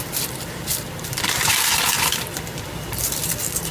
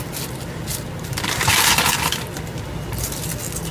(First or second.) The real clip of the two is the second